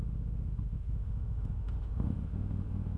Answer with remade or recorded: remade